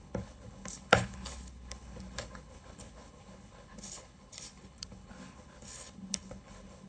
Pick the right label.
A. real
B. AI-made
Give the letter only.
B